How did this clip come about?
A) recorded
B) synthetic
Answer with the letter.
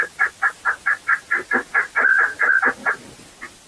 A